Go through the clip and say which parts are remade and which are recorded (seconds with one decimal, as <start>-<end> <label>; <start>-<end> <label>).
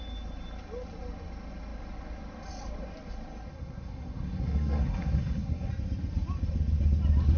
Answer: 0.0-3.5 recorded; 3.5-5.7 remade; 5.7-7.4 recorded